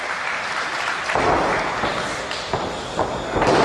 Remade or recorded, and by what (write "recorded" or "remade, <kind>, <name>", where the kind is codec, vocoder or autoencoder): remade, vocoder, BigVGAN v2